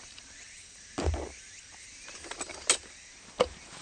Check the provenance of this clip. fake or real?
real